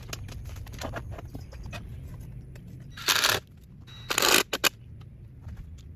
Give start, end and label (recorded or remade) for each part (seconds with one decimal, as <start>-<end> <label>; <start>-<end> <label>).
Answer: 0.0-6.0 recorded